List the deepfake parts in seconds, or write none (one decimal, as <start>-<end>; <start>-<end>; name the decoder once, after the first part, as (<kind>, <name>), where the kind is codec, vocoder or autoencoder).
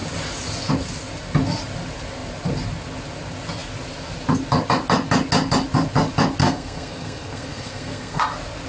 6.4-8.2 (codec, SNAC)